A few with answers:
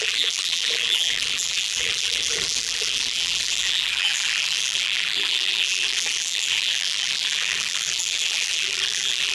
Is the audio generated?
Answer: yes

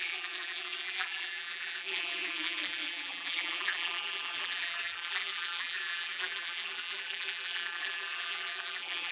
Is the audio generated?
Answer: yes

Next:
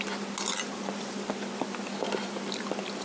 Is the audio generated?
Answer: no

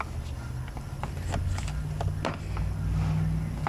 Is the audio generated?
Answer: no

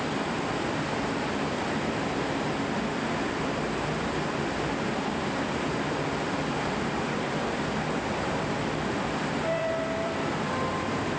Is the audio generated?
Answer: yes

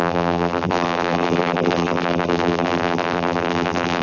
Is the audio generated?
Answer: yes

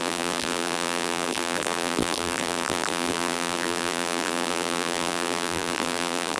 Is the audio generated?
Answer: yes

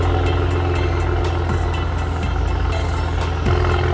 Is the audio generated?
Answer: no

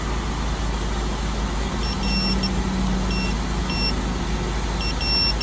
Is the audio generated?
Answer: no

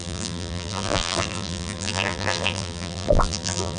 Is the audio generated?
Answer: yes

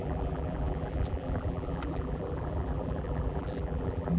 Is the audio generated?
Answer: yes